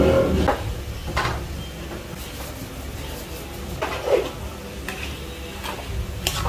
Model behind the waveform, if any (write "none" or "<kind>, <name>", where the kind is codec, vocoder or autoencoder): none